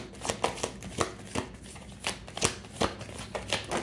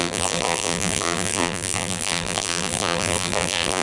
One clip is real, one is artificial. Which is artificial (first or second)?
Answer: second